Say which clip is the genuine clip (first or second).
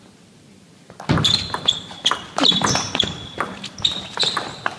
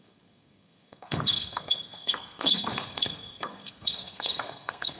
first